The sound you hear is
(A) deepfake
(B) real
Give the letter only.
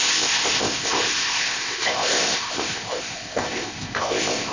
A